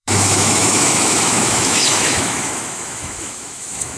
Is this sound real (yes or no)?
no